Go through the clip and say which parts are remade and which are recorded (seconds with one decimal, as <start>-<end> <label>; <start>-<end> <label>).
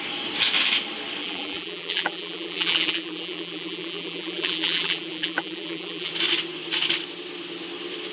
0.0-1.2 recorded; 1.2-6.1 remade; 6.1-8.1 recorded